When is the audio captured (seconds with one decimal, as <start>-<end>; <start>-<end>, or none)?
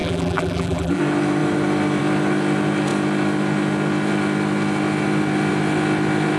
1.0-6.4